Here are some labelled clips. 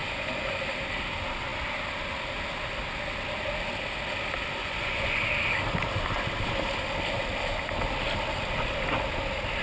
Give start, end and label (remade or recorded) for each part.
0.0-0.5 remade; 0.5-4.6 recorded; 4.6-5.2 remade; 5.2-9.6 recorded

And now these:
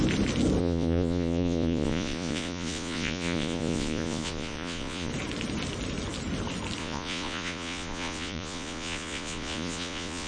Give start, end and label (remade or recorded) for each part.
0.0-0.6 recorded; 0.6-5.1 remade; 5.1-6.8 recorded; 6.8-10.3 remade

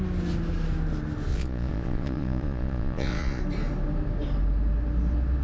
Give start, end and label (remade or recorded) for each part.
0.0-1.3 recorded; 1.3-3.4 remade; 3.4-5.4 recorded

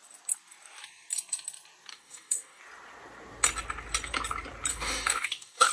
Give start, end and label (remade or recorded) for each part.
0.0-1.9 recorded; 1.9-2.6 remade; 2.6-4.7 recorded; 4.7-5.7 remade

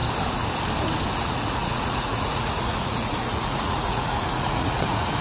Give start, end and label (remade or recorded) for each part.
0.0-1.1 recorded; 1.1-5.2 remade

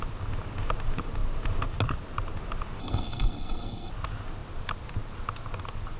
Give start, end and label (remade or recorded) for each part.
0.0-2.8 recorded; 2.8-3.9 remade; 3.9-6.0 recorded

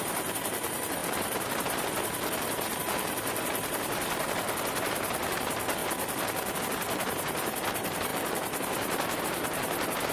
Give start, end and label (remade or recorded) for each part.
0.0-5.8 remade; 5.8-6.6 recorded; 6.6-10.1 remade

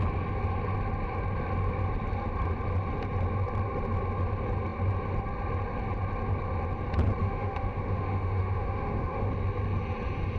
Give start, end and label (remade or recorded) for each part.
0.0-7.2 recorded; 7.2-9.3 remade; 9.3-10.4 recorded